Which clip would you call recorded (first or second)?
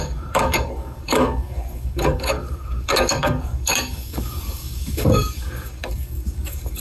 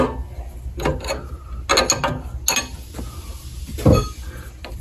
second